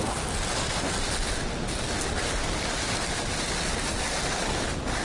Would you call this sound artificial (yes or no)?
no